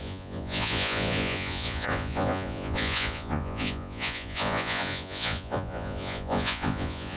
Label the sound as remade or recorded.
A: remade